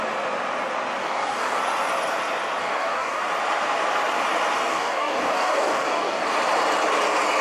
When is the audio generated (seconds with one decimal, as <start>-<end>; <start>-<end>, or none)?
1.0-1.6; 2.6-3.2; 4.7-6.2